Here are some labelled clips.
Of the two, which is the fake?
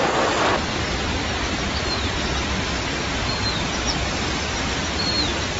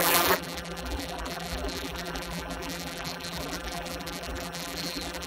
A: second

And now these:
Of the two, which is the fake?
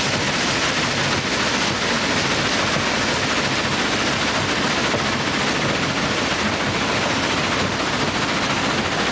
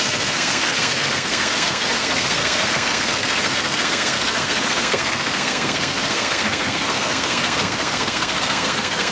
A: second